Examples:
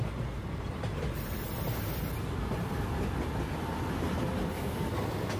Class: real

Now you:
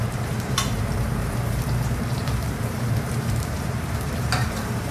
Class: fake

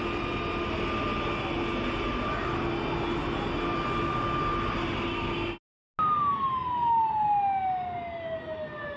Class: real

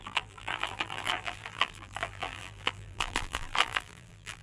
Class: fake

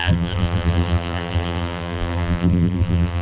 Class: fake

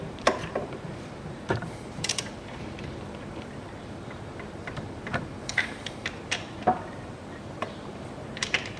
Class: fake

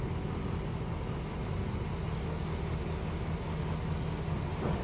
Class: real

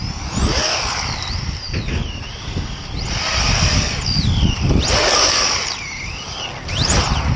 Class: real